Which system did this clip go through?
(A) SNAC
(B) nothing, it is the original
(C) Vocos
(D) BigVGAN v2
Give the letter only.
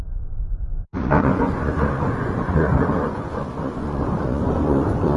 C